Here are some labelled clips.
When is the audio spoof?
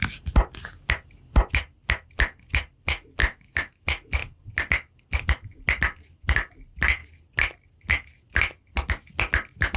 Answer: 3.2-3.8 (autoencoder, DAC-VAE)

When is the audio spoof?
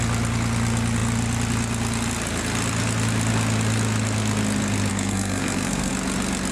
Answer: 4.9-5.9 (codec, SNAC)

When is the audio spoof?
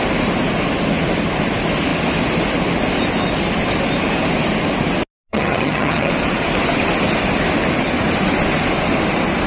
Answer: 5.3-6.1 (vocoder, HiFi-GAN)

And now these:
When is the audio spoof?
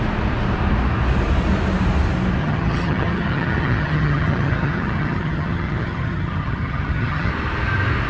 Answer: 2.4-7.3 (vocoder, HiFi-GAN)